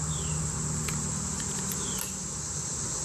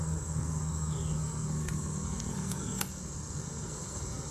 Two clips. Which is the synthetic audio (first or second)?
second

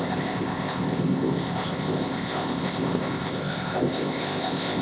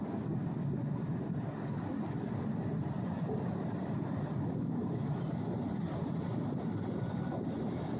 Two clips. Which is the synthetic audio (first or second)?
first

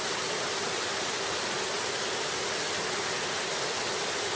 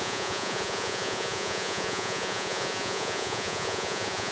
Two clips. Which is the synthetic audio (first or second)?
second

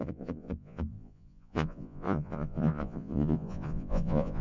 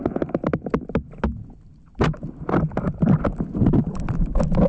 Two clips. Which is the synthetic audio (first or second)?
first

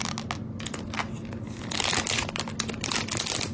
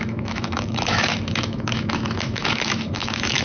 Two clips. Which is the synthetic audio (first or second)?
second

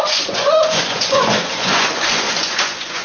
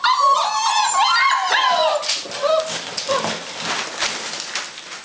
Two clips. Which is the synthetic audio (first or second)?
first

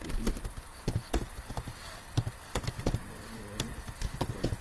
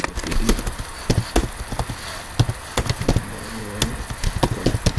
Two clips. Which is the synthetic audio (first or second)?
first